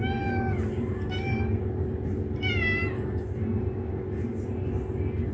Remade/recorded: recorded